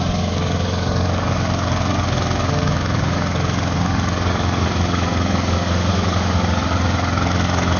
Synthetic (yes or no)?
yes